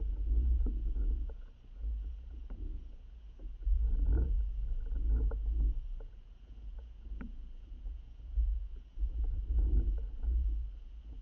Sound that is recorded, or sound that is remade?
remade